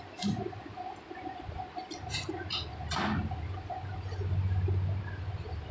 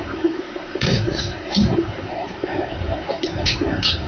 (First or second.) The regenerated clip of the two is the second